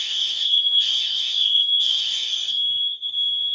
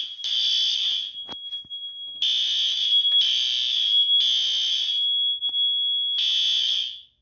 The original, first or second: second